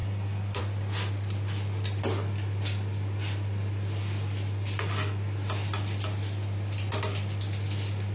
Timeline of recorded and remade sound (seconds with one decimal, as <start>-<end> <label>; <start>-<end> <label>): 0.0-0.6 remade; 0.6-8.1 recorded